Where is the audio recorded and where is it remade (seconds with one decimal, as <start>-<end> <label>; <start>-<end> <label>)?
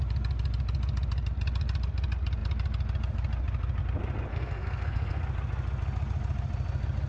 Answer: 0.0-4.3 recorded; 4.3-5.2 remade; 5.2-7.1 recorded